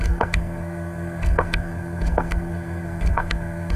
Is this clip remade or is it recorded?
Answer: remade